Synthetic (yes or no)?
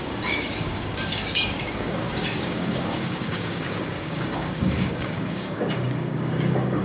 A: yes